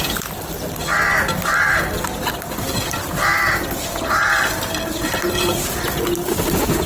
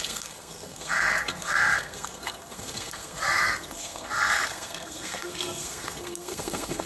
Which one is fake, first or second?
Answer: second